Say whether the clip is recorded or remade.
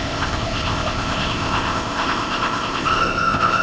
remade